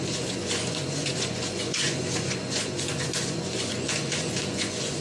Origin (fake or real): fake